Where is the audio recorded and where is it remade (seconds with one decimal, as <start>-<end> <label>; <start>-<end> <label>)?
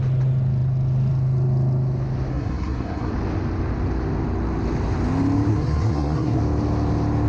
0.0-2.3 recorded; 2.3-3.1 remade; 3.1-5.5 recorded; 5.5-6.4 remade; 6.4-7.3 recorded